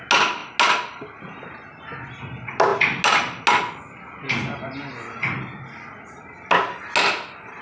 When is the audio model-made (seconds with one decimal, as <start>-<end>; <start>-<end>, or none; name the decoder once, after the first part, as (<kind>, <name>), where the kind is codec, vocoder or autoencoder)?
none